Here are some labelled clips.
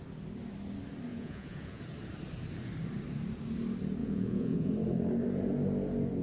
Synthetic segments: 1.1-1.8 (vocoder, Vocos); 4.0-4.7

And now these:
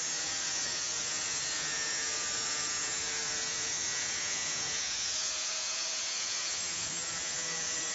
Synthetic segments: 0.0-7.9 (vocoder, Vocos)

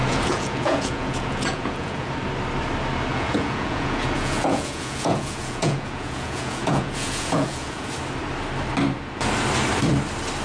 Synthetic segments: 0.0-2.1 (vocoder, Vocos); 3.1-7.9

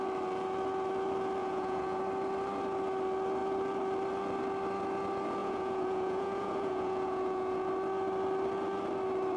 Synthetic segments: 1.4-2.0 (vocoder, Vocos); 5.4-7.7

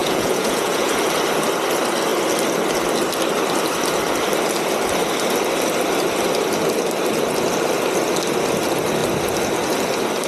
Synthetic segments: 0.0-0.9 (vocoder, Vocos)

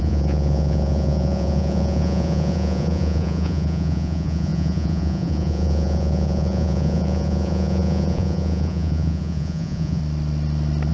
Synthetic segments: 0.0-10.0 (vocoder, Vocos)

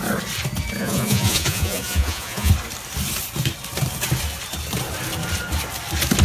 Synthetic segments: 0.8-2.5 (vocoder, Vocos)